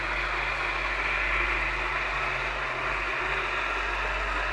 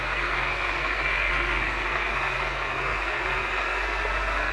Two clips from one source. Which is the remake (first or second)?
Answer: second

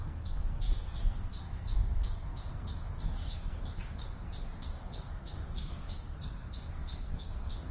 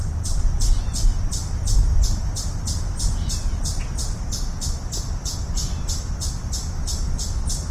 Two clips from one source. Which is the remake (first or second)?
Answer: first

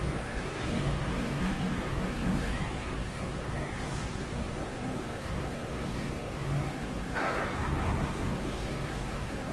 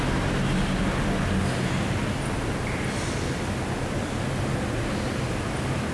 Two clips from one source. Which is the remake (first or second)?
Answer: first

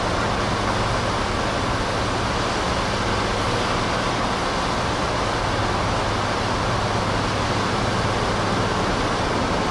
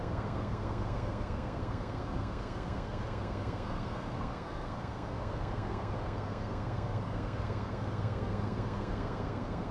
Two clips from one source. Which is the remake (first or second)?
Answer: second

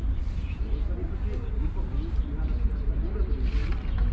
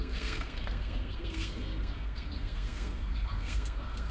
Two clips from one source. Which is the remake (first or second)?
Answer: second